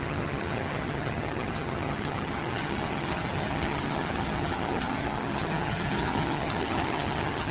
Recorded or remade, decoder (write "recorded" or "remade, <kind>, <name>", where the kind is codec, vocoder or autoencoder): remade, vocoder, HiFi-GAN